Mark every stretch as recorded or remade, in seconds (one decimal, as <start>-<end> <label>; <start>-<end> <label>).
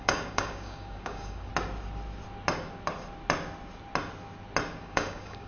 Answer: 0.0-1.5 remade; 1.5-4.8 recorded; 4.8-5.5 remade